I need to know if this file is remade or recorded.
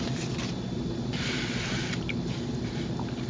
recorded